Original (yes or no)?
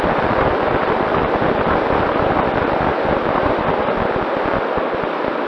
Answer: yes